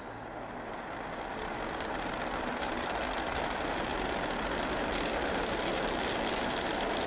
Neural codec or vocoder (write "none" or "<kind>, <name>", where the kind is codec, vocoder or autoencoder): vocoder, BigVGAN v2